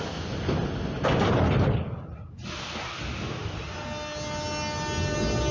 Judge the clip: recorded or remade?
recorded